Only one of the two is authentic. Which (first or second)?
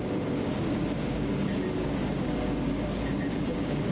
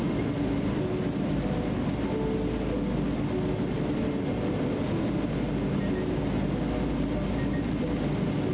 second